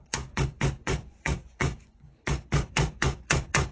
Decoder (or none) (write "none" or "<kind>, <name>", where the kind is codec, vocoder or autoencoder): vocoder, Vocos